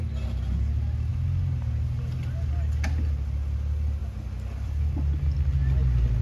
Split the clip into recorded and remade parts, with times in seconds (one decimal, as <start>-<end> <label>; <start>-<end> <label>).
0.0-6.2 recorded